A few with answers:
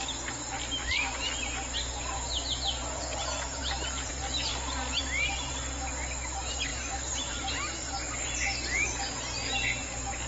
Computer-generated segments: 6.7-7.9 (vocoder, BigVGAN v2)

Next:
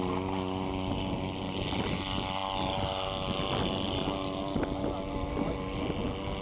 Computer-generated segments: none